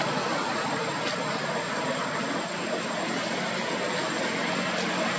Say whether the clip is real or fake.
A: real